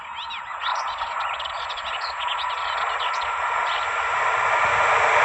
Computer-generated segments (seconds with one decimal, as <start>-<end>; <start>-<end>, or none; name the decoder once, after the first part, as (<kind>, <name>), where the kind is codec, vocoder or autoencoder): 0.7-3.8 (vocoder, Vocos)